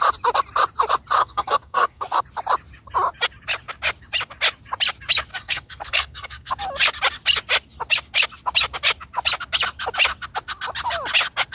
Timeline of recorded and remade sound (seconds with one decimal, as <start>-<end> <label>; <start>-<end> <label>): 0.0-1.2 recorded; 1.2-2.2 remade; 2.2-5.3 recorded; 5.3-6.5 remade; 6.5-11.5 recorded